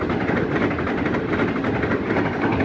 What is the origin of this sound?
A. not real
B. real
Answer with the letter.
B